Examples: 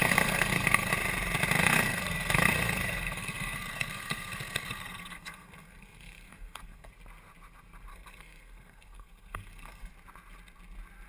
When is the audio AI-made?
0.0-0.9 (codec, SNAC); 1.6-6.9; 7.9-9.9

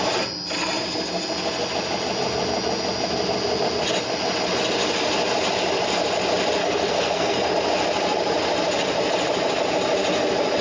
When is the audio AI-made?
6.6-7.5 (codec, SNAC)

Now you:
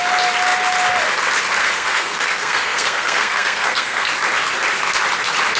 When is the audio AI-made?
1.6-4.1 (codec, SNAC)

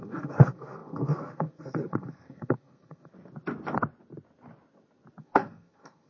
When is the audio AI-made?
0.0-3.1 (codec, SNAC); 5.2-6.1

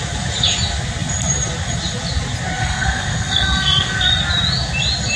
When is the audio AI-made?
2.6-4.2 (codec, SNAC)